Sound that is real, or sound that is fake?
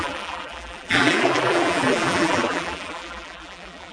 fake